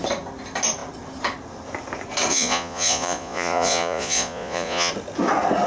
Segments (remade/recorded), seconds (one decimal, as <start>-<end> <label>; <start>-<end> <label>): 0.0-2.3 recorded; 2.3-4.9 remade; 4.9-5.7 recorded